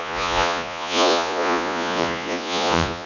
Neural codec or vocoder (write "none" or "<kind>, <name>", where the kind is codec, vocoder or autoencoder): vocoder, Vocos